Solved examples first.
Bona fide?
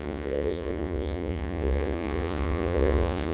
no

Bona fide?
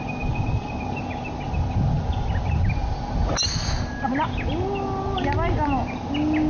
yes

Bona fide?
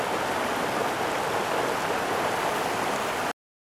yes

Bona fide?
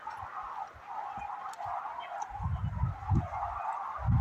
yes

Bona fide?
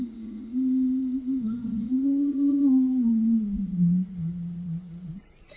no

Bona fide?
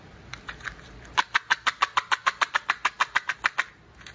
yes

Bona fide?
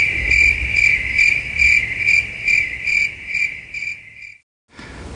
yes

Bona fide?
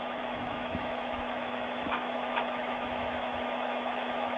no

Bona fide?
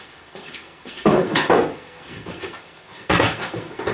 no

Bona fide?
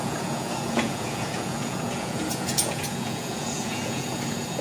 no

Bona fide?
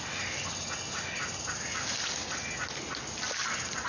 yes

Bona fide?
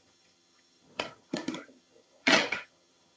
no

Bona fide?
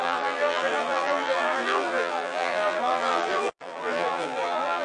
no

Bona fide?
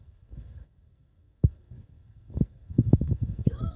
no